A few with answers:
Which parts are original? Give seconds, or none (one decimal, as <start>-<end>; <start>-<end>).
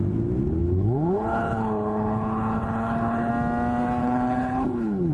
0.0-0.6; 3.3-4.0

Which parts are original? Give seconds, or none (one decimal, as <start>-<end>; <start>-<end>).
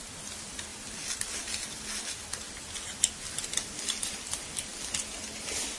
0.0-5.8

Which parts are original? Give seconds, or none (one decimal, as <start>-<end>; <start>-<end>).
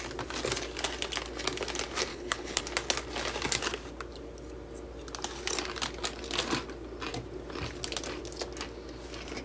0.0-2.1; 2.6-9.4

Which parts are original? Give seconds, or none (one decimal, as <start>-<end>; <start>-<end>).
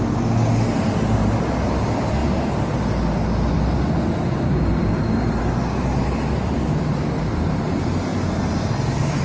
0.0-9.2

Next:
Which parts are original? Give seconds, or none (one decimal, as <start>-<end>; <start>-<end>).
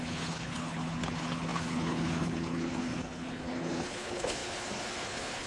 none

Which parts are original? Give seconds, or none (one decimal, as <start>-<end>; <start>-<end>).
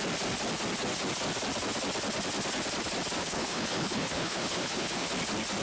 0.0-3.2; 5.1-5.6